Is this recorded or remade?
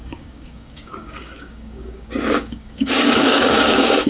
remade